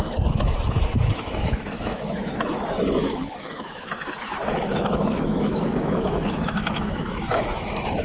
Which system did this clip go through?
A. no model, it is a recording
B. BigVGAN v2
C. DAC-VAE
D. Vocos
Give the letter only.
C